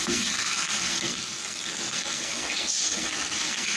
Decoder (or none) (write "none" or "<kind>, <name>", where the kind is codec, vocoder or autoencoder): codec, SNAC